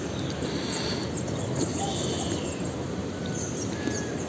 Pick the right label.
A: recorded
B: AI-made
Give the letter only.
A